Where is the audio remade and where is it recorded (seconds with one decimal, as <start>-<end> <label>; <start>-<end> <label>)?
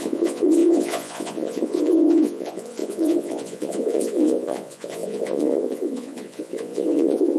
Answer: 0.0-7.4 remade